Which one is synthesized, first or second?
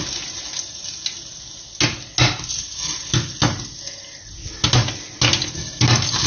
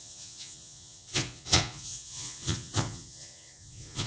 second